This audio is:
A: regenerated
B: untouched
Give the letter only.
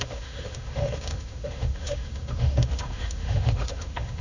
A